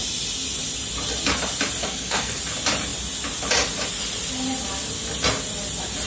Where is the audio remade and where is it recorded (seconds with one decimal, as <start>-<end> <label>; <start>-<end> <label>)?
0.0-1.8 recorded; 1.8-2.4 remade; 2.4-6.1 recorded